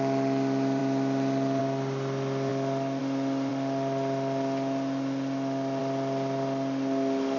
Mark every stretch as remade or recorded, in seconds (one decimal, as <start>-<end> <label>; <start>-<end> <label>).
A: 0.0-7.4 recorded